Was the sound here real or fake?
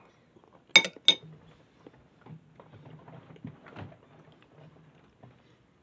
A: real